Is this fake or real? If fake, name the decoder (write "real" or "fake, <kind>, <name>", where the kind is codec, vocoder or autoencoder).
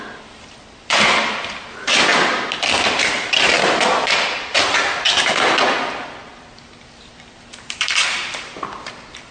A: fake, vocoder, BigVGAN v2